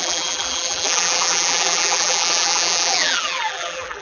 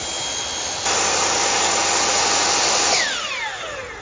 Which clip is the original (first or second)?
second